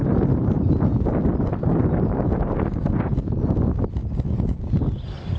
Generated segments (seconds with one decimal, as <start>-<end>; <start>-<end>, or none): none